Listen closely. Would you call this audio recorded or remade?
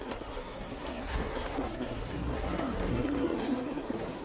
remade